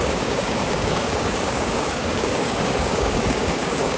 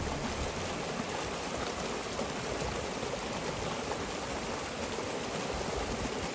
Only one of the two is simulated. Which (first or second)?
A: first